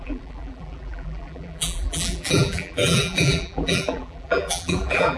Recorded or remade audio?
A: remade